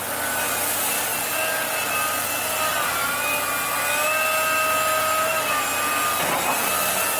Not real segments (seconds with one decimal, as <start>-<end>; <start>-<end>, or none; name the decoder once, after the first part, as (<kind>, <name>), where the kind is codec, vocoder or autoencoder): none